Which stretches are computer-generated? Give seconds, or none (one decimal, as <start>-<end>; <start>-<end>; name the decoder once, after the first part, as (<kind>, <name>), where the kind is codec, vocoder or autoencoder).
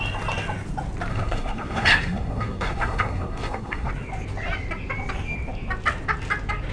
1.1-3.9 (codec, SNAC)